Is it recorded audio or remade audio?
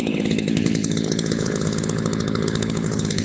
remade